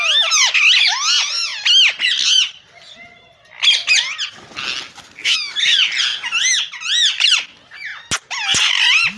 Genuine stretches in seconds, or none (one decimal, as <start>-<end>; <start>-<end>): 0.0-9.2